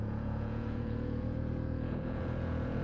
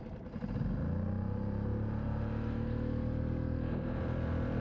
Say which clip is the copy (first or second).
first